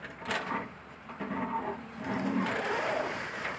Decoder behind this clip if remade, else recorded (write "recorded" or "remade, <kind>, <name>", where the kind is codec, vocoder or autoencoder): remade, vocoder, BigVGAN v2